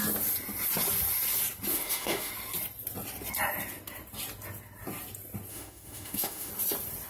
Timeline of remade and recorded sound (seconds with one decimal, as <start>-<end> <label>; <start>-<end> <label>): 0.0-1.7 recorded; 1.7-2.3 remade; 2.3-5.5 recorded; 5.5-6.5 remade; 6.5-7.1 recorded